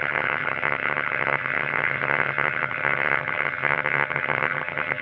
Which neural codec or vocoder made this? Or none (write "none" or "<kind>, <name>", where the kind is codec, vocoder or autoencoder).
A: vocoder, HiFi-GAN